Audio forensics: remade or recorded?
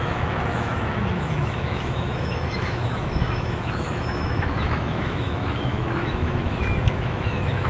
remade